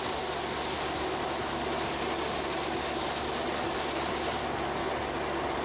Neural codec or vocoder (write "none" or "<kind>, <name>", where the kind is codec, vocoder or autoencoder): none